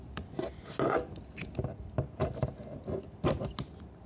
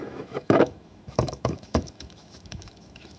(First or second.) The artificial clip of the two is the second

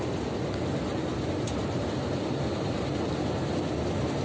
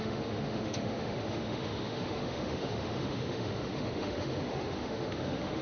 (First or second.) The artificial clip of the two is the second